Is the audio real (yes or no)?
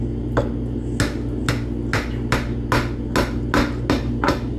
yes